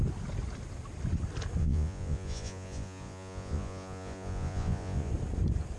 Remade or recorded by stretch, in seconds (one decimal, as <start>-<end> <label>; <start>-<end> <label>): 0.0-1.6 recorded; 1.6-5.1 remade; 5.1-5.8 recorded